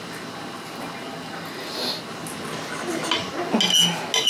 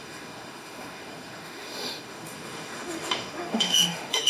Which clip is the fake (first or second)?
second